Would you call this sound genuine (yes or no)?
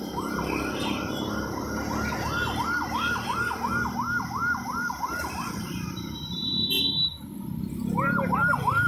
yes